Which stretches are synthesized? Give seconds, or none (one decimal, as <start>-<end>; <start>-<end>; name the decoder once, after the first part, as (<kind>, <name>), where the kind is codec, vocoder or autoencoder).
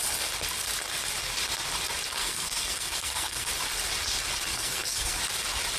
2.2-3.5 (codec, SNAC); 4.5-5.2